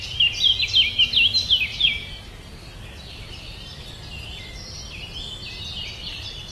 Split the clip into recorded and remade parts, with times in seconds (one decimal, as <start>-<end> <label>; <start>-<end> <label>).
0.0-1.7 recorded; 1.7-2.2 remade; 2.2-6.5 recorded